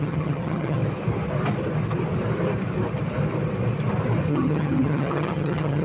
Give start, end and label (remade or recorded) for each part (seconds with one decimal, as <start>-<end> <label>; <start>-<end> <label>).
0.0-0.8 remade; 0.8-4.3 recorded; 4.3-5.8 remade